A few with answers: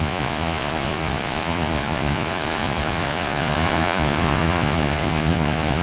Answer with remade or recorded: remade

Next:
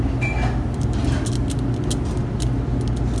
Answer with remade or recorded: recorded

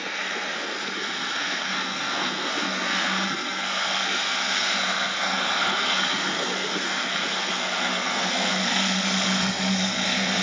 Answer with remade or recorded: remade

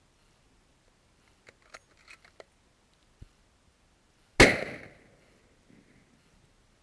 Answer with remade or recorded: recorded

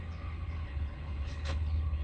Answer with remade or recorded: remade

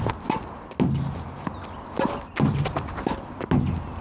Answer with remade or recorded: recorded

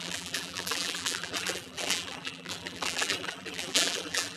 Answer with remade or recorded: remade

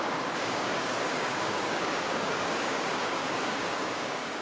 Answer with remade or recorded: remade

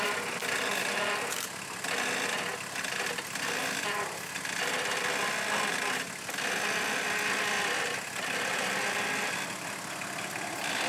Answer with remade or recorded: recorded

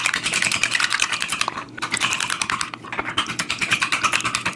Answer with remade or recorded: recorded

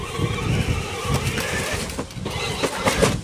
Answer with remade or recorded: recorded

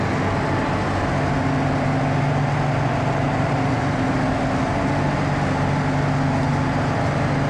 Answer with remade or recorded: recorded